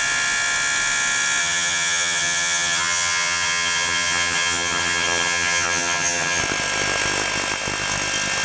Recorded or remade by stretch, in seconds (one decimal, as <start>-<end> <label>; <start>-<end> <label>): 0.0-1.4 recorded; 1.4-6.4 remade; 6.4-8.4 recorded

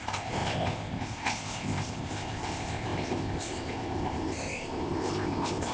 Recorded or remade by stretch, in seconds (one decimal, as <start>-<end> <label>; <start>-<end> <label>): 0.0-5.7 remade

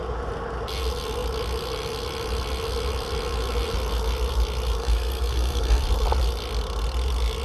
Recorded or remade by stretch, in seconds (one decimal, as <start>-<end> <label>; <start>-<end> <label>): 0.0-4.8 recorded; 4.8-5.8 remade; 5.8-7.4 recorded

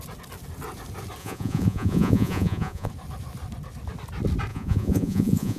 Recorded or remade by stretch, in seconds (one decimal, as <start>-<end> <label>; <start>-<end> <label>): 0.0-1.2 recorded; 1.2-2.9 remade; 2.9-4.5 recorded; 4.5-5.6 remade

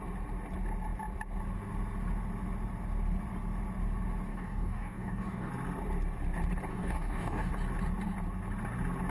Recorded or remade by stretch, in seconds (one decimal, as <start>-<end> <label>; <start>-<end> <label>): 0.0-4.3 recorded; 4.3-5.5 remade; 5.5-6.7 recorded; 6.7-7.5 remade; 7.5-9.1 recorded

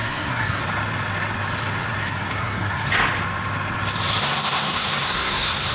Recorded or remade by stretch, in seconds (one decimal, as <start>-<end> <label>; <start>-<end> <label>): 0.0-0.6 remade; 0.6-2.0 recorded; 2.0-2.9 remade; 2.9-4.2 recorded; 4.2-5.7 remade

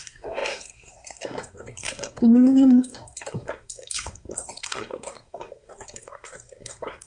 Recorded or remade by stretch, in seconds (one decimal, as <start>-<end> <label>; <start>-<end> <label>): 0.0-7.1 remade